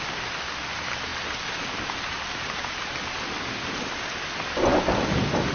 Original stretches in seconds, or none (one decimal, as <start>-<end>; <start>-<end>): 0.0-5.5